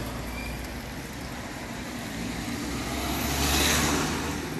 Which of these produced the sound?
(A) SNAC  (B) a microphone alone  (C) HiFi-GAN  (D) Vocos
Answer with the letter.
B